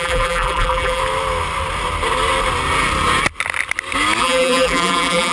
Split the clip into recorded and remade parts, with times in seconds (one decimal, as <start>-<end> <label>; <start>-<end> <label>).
0.0-1.0 remade; 1.0-4.2 recorded; 4.2-5.3 remade